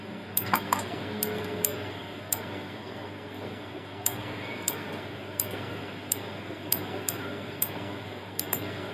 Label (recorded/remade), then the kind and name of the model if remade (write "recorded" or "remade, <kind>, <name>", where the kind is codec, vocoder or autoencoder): remade, codec, SNAC